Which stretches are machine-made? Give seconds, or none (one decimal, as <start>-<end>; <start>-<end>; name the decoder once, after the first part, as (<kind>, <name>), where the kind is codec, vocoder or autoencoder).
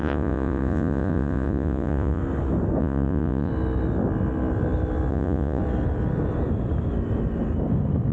0.0-2.2 (vocoder, Vocos); 2.8-3.5; 5.1-5.6